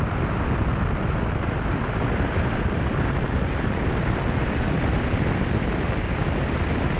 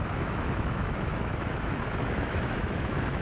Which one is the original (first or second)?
first